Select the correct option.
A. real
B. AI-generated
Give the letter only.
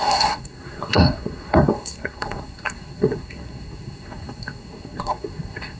B